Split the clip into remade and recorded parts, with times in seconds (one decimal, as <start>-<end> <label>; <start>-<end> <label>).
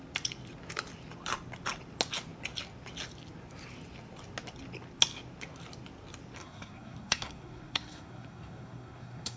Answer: 0.0-6.4 recorded; 6.4-9.4 remade